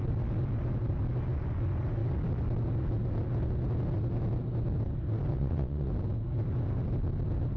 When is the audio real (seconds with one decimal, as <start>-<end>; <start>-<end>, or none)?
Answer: 0.0-5.3; 5.9-7.6